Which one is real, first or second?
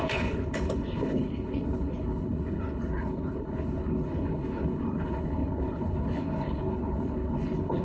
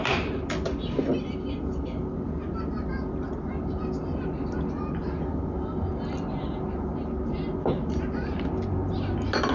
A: second